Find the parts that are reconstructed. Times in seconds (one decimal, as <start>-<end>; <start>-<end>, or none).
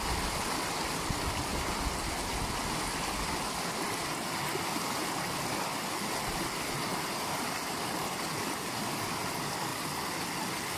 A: none